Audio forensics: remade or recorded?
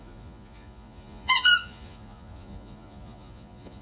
remade